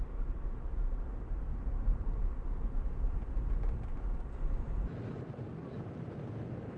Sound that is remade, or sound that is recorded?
remade